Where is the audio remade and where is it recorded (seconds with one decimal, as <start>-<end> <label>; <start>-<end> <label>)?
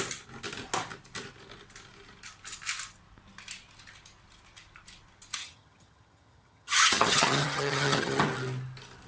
0.0-5.4 recorded; 5.4-8.2 remade; 8.2-9.1 recorded